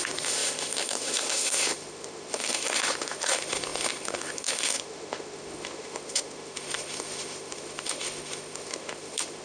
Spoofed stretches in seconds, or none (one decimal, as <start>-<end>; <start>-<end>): 0.0-9.4